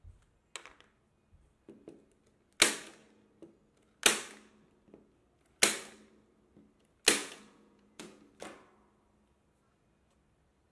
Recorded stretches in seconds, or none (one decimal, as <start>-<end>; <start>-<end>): 0.0-7.2; 8.2-10.7